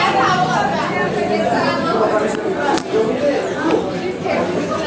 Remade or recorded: recorded